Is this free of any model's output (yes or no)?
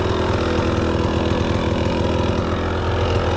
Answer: yes